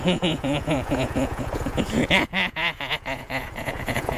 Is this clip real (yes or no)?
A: no